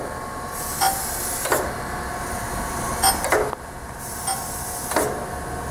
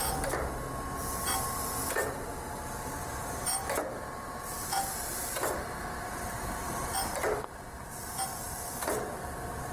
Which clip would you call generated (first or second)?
second